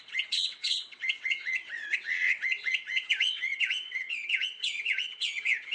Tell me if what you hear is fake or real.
fake